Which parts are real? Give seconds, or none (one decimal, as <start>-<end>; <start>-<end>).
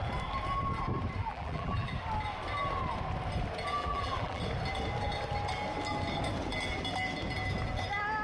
0.0-1.2; 1.9-3.8; 4.4-8.2